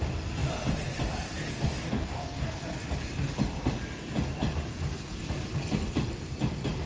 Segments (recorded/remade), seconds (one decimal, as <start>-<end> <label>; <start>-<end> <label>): 0.0-1.5 recorded; 1.5-2.6 remade; 2.6-6.9 recorded